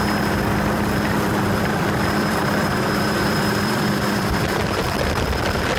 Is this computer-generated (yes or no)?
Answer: yes